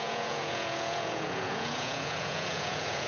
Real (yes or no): no